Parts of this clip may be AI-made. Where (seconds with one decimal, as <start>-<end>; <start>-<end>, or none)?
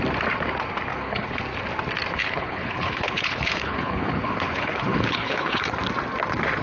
0.9-1.4; 2.2-5.7